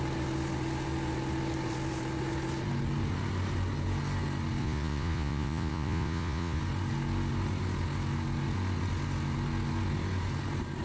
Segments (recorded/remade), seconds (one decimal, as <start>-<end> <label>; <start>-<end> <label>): 0.0-4.6 recorded; 4.6-6.6 remade; 6.6-10.8 recorded